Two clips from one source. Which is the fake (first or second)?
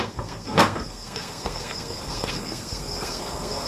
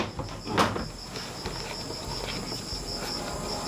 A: first